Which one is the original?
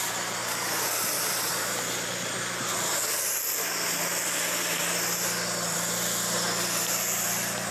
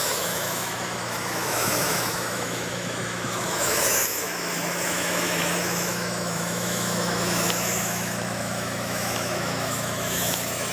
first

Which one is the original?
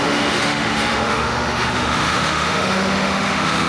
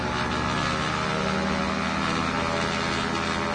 second